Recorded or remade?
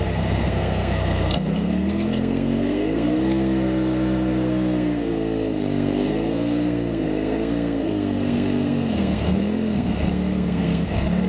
remade